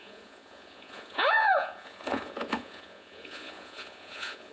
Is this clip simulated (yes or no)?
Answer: yes